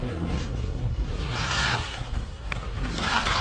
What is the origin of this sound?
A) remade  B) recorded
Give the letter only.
A